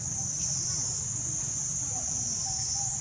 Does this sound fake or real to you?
real